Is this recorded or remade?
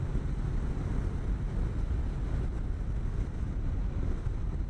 recorded